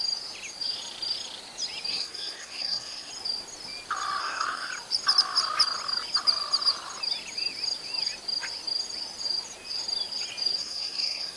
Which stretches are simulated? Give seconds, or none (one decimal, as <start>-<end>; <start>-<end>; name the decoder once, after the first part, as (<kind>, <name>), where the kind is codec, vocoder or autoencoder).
1.9-3.1 (codec, SNAC); 4.2-4.7; 10.6-11.4